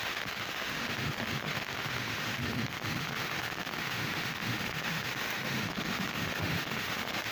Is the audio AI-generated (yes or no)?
yes